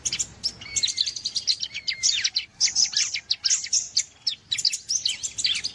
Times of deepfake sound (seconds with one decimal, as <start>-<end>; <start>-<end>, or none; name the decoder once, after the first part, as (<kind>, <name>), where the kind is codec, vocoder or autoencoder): none

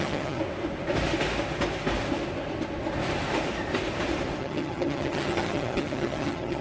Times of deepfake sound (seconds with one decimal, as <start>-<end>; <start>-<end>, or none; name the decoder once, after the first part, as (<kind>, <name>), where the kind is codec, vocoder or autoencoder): 0.0-0.4 (vocoder, HiFi-GAN); 4.4-6.6

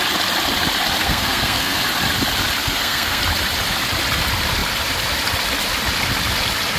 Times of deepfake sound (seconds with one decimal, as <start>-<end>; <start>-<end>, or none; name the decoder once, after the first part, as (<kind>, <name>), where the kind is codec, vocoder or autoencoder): 1.0-1.8 (codec, SNAC); 2.6-3.2

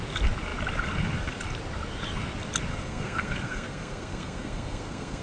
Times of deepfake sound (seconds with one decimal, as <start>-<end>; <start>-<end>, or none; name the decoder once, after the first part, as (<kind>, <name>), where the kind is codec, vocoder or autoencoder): 2.7-5.2 (codec, SNAC)

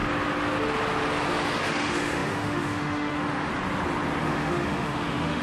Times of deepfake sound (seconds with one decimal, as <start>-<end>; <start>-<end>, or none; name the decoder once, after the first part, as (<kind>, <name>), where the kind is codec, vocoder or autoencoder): 1.6-3.5 (autoencoder, DAC-VAE); 4.2-5.4

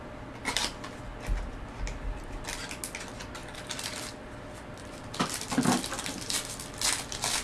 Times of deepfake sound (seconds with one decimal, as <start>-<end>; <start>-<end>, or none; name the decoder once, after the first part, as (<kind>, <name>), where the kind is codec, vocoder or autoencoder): none

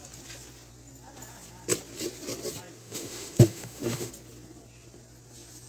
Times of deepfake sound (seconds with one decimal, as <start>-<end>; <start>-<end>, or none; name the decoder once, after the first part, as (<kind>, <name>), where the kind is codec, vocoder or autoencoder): 2.8-4.1 (autoencoder, DAC-VAE)

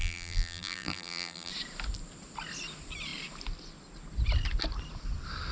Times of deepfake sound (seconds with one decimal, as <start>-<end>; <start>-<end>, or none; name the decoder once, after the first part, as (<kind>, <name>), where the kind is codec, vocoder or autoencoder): 0.0-1.5 (vocoder, BigVGAN v2)